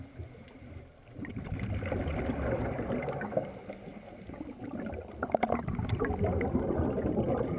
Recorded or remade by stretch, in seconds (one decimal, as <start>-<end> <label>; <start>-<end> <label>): 0.0-3.9 recorded; 3.9-6.0 remade; 6.0-7.6 recorded